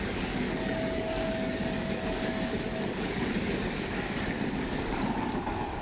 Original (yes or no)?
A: no